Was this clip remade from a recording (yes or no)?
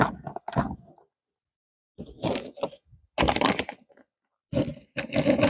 no